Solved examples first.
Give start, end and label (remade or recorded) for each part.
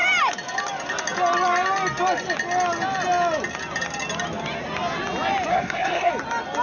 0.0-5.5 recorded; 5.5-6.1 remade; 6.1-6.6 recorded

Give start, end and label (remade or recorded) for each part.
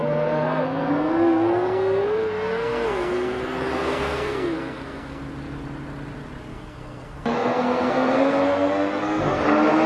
0.0-5.2 remade; 5.2-6.5 recorded; 6.5-9.4 remade; 9.4-9.9 recorded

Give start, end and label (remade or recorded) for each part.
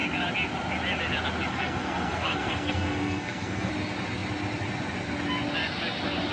0.0-1.5 recorded; 1.5-3.7 remade; 3.7-6.3 recorded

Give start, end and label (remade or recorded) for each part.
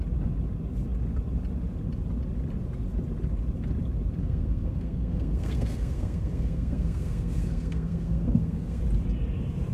0.0-4.2 recorded; 4.2-8.8 remade; 8.8-9.7 recorded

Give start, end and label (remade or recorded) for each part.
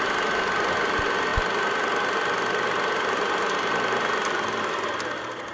0.0-5.5 recorded